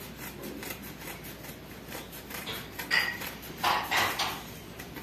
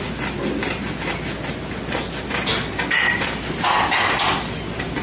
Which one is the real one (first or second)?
second